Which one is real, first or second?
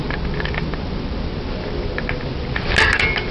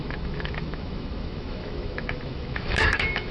first